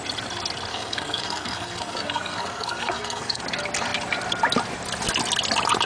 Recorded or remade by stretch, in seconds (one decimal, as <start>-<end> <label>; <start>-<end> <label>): 0.0-0.7 recorded; 0.7-3.4 remade; 3.4-5.9 recorded

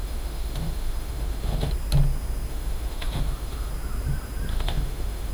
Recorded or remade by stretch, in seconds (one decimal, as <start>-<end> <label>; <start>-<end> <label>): 0.0-1.7 remade; 1.7-2.5 recorded; 2.5-3.7 remade; 3.7-4.5 recorded; 4.5-5.3 remade